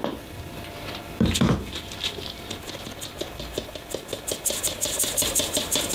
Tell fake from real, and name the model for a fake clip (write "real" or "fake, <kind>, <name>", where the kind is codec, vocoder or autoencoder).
real